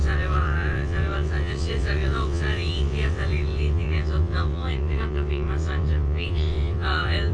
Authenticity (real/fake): fake